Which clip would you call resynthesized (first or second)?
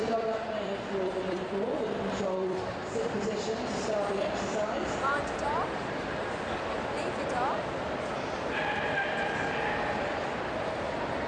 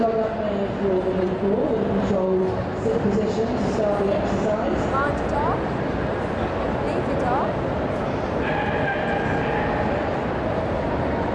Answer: first